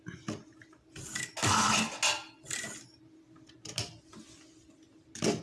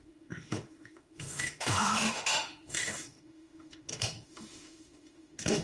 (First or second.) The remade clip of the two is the second